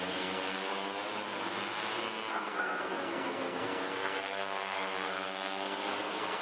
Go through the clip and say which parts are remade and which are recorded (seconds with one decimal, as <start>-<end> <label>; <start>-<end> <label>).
0.0-0.7 remade; 0.7-2.3 recorded; 2.3-6.4 remade

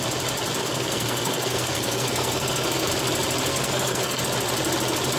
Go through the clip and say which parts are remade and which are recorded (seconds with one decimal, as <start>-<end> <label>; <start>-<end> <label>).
0.0-0.6 recorded; 0.6-2.9 remade; 2.9-3.5 recorded; 3.5-4.2 remade; 4.2-5.2 recorded

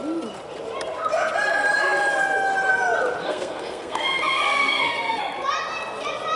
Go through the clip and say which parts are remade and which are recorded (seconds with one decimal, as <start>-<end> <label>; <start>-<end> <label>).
0.0-3.2 recorded; 3.2-5.2 remade; 5.2-6.4 recorded

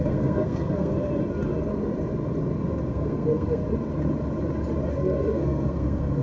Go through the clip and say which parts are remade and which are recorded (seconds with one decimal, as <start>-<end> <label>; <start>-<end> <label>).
0.0-0.9 remade; 0.9-2.9 recorded; 2.9-3.6 remade; 3.6-4.9 recorded; 4.9-6.2 remade

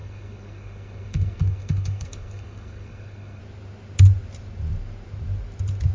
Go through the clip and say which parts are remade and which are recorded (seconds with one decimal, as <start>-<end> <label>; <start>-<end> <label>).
0.0-3.4 remade; 3.4-5.9 recorded